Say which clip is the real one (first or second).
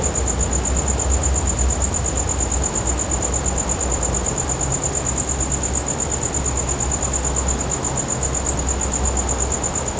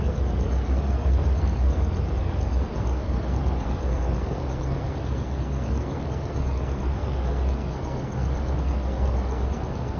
first